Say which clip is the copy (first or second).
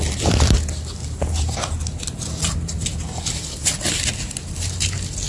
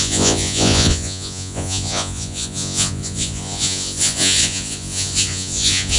second